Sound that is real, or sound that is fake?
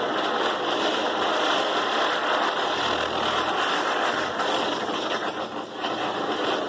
real